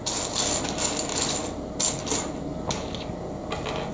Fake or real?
real